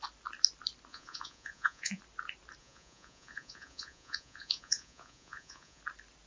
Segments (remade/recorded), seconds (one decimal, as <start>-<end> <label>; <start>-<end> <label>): 0.0-0.9 recorded; 0.9-2.0 remade; 2.0-2.6 recorded; 2.6-5.8 remade; 5.8-6.3 recorded